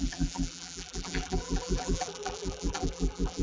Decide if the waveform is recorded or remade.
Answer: remade